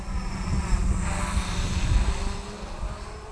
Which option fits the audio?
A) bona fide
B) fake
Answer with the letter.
A